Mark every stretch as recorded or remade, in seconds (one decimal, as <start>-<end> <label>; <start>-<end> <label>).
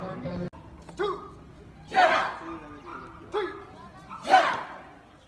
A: 0.0-5.3 recorded